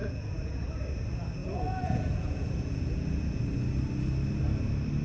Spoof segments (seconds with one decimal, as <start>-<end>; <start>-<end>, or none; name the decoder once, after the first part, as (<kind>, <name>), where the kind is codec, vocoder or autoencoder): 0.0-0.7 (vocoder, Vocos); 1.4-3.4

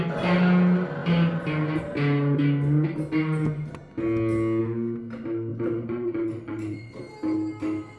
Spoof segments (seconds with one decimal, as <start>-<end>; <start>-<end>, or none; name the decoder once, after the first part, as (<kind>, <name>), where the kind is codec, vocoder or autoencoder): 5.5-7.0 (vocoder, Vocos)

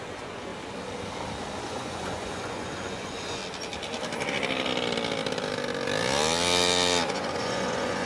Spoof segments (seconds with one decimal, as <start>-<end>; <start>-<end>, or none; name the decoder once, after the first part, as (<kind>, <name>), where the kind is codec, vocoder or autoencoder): 0.0-0.5 (vocoder, Vocos); 1.6-3.4; 7.1-8.1